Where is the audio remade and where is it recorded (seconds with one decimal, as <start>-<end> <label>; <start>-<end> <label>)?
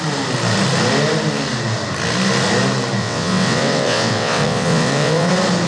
0.0-3.0 recorded; 3.0-5.3 remade; 5.3-5.7 recorded